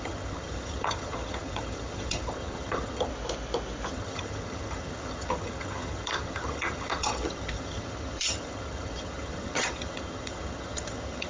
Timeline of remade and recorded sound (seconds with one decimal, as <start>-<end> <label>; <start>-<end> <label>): 0.0-3.1 remade; 3.1-3.9 recorded; 3.9-11.3 remade